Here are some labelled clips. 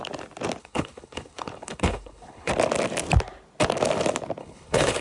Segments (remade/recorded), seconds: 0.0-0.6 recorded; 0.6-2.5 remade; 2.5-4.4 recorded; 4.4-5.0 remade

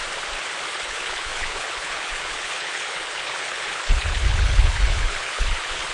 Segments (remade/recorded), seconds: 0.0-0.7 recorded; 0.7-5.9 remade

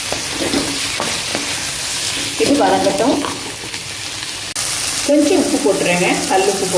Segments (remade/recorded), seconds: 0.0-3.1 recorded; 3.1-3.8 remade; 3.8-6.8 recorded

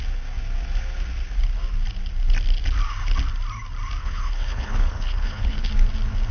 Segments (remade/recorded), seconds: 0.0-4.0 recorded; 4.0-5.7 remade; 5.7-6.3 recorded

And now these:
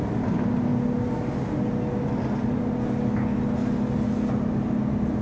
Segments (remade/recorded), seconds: 0.0-5.2 recorded